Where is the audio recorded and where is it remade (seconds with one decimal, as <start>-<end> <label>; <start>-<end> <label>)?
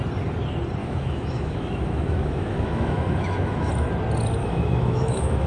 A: 0.0-0.8 recorded; 0.8-3.7 remade; 3.7-4.4 recorded; 4.4-5.5 remade